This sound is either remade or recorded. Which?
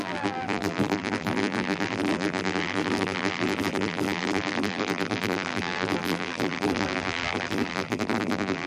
remade